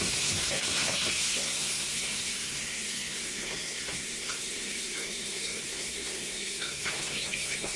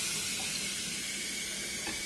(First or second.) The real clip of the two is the second